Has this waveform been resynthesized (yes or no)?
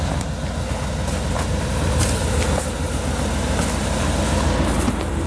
no